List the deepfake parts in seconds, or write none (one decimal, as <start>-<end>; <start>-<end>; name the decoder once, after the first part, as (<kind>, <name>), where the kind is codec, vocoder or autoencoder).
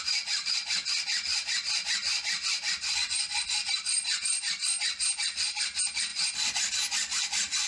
0.4-5.0 (vocoder, BigVGAN v2)